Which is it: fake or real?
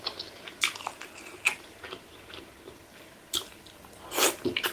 real